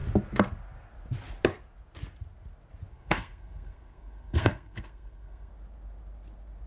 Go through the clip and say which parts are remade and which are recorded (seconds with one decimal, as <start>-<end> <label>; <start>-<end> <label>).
0.0-2.9 recorded; 2.9-5.5 remade; 5.5-6.7 recorded